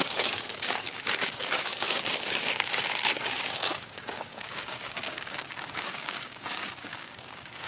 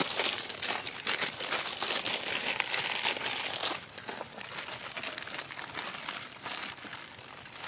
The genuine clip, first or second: second